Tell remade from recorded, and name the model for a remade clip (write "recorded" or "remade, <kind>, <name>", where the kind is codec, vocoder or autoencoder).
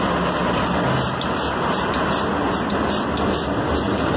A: recorded